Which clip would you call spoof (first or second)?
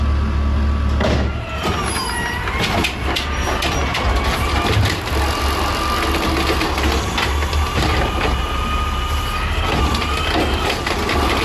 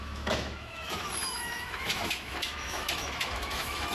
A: second